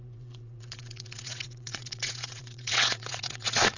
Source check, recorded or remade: remade